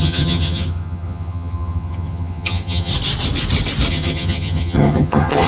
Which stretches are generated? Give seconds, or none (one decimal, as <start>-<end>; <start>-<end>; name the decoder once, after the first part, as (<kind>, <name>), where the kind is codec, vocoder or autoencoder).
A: 0.0-2.9 (vocoder, HiFi-GAN); 3.9-5.5